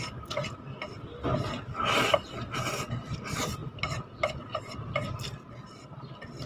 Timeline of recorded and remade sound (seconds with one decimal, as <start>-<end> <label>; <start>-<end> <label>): 0.0-2.1 recorded; 2.1-2.9 remade; 2.9-6.5 recorded